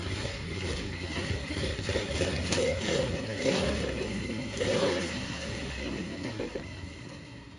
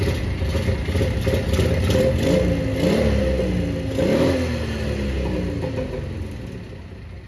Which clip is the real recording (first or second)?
second